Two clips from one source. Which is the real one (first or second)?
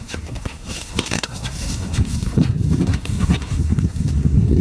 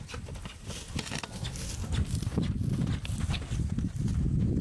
second